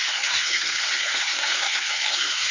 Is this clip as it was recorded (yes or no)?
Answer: no